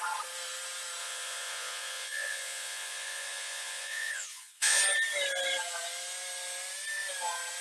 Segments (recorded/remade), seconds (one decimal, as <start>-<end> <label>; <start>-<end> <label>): 0.0-1.0 recorded; 1.0-4.8 remade; 4.8-7.6 recorded

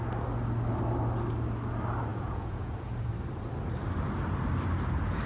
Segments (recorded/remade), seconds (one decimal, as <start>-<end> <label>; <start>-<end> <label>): 0.0-2.1 recorded; 2.1-3.1 remade; 3.1-5.3 recorded